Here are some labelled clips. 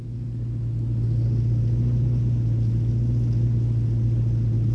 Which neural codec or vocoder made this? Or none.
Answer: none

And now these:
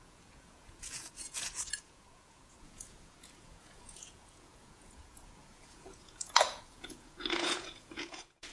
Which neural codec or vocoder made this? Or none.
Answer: vocoder, Vocos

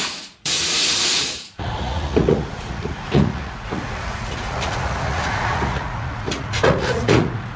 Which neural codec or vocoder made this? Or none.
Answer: vocoder, Vocos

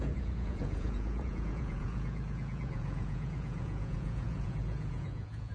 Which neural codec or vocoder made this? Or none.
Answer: vocoder, Vocos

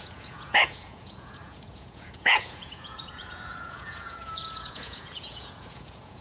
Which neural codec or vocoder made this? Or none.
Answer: vocoder, Vocos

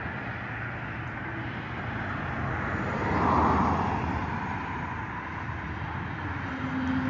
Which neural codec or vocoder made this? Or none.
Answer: none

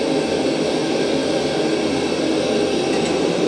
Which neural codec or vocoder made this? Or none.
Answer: none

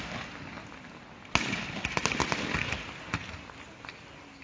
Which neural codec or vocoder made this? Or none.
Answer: none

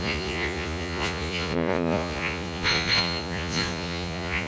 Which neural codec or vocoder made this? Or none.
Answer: vocoder, Vocos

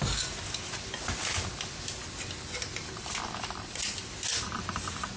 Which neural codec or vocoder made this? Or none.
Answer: none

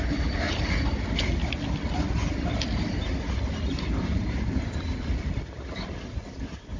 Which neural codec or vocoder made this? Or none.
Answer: none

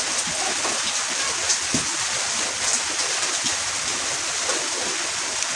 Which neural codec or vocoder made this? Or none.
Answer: none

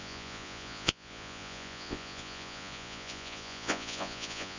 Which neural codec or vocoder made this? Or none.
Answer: vocoder, Vocos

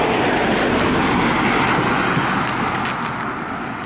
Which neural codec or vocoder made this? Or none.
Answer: none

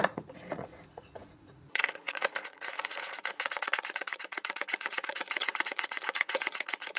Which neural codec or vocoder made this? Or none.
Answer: vocoder, Vocos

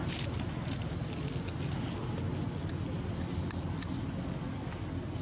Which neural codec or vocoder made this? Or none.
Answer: none